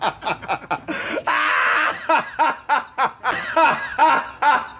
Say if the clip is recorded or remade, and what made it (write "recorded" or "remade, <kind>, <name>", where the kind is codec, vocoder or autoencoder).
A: recorded